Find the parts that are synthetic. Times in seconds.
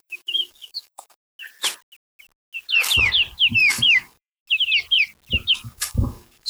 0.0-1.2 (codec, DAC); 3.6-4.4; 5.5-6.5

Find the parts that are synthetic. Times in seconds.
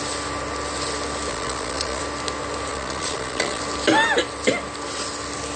1.3-2.0 (vocoder, Vocos); 2.7-3.6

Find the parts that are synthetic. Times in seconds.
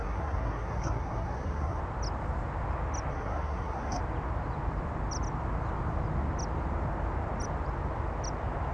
0.0-1.8 (codec, SNAC); 3.1-4.0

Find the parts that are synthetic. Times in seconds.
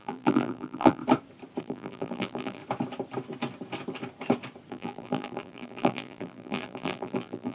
0.0-1.0 (vocoder, BigVGAN v2); 1.6-2.6; 4.7-7.5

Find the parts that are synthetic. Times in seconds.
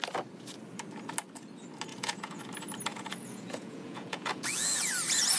1.9-2.4 (vocoder, Vocos); 2.9-4.9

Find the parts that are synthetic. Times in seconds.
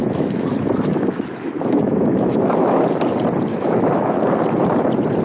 0.0-2.8 (autoencoder, DAC-VAE); 3.5-4.2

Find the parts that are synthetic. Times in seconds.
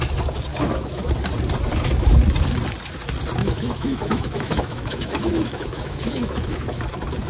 0.5-1.1 (autoencoder, DAC-VAE); 3.4-6.8